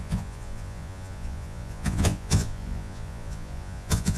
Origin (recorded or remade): remade